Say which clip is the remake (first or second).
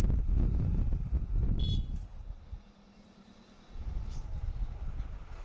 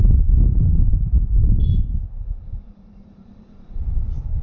second